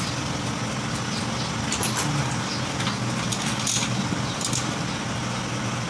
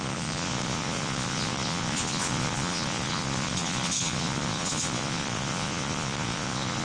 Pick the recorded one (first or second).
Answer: first